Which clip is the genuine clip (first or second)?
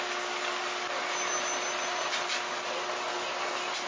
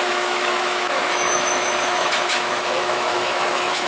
first